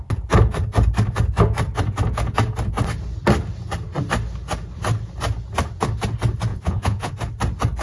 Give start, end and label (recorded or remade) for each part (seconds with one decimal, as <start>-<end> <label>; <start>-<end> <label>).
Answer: 0.0-6.5 recorded; 6.5-7.1 remade; 7.1-7.8 recorded

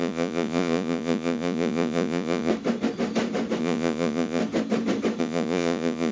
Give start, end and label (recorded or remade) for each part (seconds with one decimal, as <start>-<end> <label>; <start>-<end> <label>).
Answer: 0.0-2.5 remade; 2.5-3.6 recorded; 3.6-4.4 remade; 4.4-5.2 recorded; 5.2-6.1 remade